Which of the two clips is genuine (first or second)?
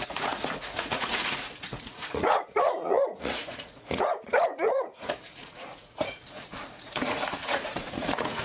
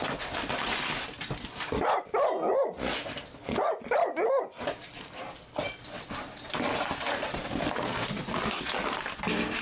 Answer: second